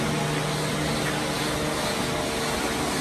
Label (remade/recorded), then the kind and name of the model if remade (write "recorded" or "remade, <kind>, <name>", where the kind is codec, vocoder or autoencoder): recorded